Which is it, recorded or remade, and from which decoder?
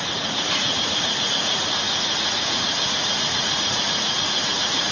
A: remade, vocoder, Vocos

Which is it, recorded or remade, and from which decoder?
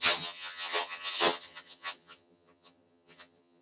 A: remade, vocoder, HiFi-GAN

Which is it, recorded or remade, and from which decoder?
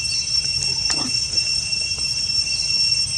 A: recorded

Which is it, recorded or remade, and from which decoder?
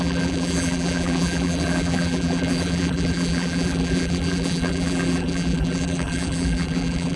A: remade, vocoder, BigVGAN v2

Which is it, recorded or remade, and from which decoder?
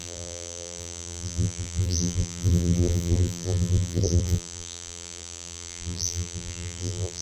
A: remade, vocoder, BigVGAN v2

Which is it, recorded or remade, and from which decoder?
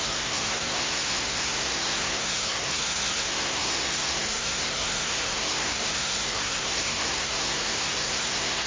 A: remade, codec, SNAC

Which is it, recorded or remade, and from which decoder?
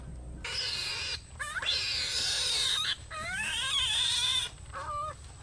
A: recorded